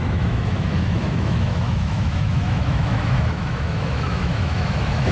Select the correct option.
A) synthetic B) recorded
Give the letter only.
A